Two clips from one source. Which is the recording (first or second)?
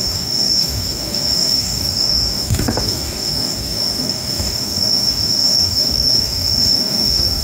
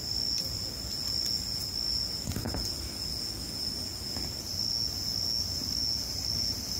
second